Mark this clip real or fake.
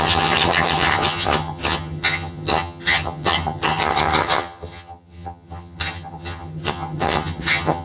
fake